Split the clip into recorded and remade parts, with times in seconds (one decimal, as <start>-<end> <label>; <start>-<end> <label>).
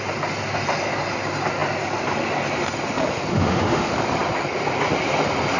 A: 0.0-3.3 recorded; 3.3-3.9 remade; 3.9-5.6 recorded